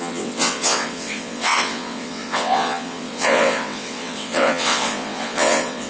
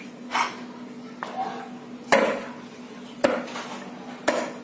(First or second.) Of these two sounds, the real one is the second